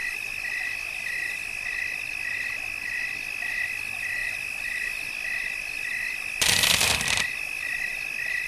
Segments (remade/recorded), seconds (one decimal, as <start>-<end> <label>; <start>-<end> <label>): 0.0-1.8 remade; 1.8-4.2 recorded; 4.2-7.9 remade; 7.9-8.5 recorded